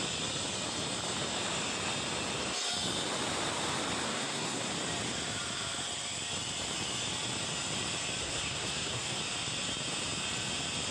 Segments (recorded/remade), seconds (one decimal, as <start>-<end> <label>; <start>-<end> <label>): 0.0-4.1 recorded; 4.1-4.7 remade; 4.7-8.2 recorded; 8.2-9.2 remade; 9.2-10.9 recorded